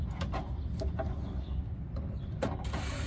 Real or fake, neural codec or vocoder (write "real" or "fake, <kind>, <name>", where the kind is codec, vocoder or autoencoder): real